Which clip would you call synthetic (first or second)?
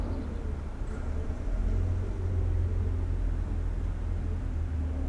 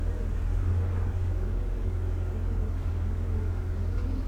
second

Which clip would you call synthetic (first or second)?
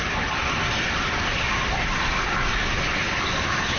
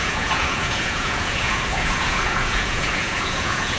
second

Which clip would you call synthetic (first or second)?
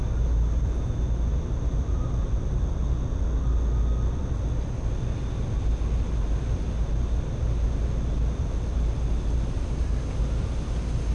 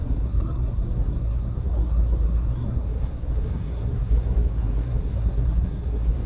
second